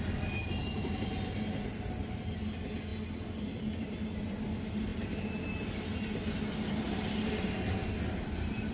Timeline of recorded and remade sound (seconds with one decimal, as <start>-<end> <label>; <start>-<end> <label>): 0.0-8.7 recorded